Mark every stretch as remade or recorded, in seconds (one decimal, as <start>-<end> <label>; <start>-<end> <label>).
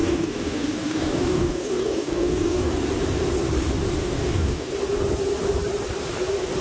0.0-2.7 remade; 2.7-4.0 recorded; 4.0-4.7 remade; 4.7-6.6 recorded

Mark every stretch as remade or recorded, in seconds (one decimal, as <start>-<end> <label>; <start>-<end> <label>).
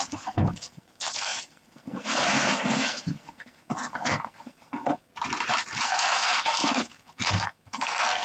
0.0-5.1 remade; 5.1-5.8 recorded; 5.8-8.2 remade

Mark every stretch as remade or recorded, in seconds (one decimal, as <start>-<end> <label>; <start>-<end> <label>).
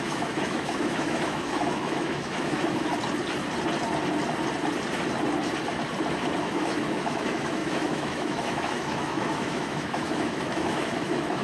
0.0-2.9 remade; 2.9-6.4 recorded; 6.4-11.4 remade